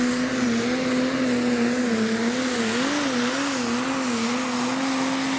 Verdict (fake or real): real